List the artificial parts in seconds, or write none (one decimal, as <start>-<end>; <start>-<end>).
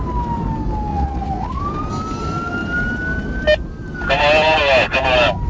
0.9-1.6